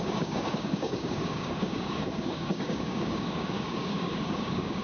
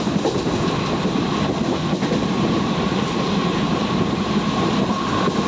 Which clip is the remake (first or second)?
first